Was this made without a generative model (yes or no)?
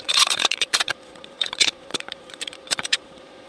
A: no